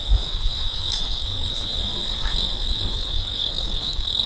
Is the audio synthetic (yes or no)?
yes